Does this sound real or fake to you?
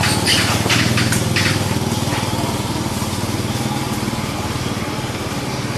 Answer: real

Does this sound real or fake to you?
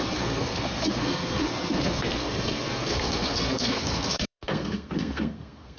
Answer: fake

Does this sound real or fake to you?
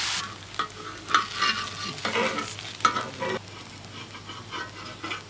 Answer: real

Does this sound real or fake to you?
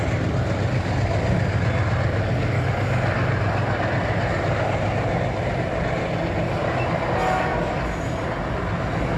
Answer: real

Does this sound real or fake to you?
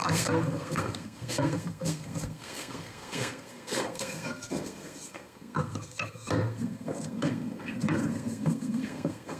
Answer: fake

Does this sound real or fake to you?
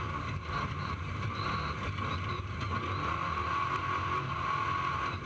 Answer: real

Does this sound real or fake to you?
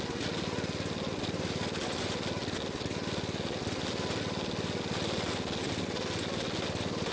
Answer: real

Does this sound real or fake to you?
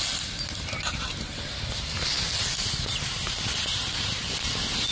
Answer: real